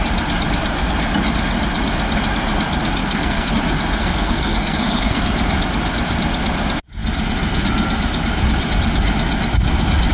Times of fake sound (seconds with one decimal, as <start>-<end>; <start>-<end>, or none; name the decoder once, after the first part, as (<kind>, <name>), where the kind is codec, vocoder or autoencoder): 3.0-3.5 (codec, SNAC); 4.0-5.2